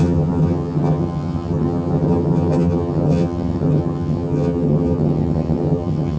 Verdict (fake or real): fake